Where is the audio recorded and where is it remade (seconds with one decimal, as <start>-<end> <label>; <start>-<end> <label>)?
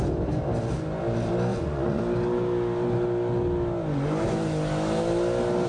0.0-1.5 recorded; 1.5-2.0 remade; 2.0-5.7 recorded